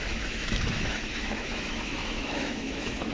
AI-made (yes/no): yes